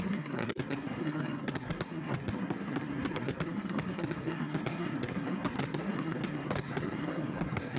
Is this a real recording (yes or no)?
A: no